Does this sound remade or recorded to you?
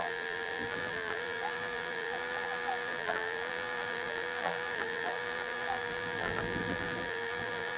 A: remade